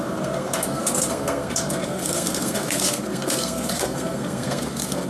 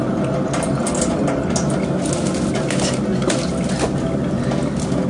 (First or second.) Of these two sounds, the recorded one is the second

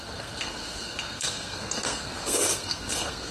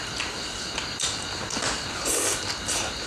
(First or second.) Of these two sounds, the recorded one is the second